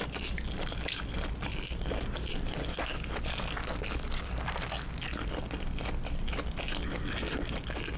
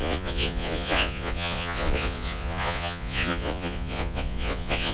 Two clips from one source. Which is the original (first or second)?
first